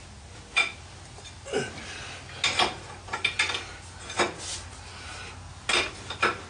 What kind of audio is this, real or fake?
real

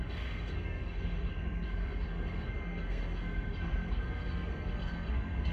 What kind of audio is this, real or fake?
fake